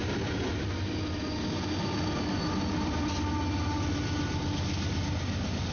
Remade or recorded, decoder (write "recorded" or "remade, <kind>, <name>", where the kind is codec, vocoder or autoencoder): recorded